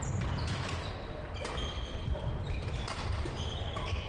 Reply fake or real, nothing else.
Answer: real